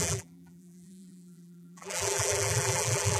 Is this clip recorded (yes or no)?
no